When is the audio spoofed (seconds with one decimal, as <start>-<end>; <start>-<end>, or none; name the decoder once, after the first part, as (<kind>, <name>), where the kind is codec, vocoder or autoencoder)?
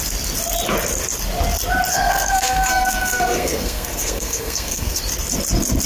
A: 1.9-5.0 (codec, SNAC)